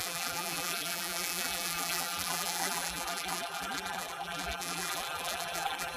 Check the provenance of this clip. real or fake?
fake